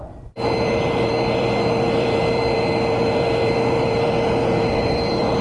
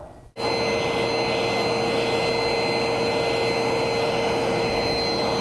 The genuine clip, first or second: second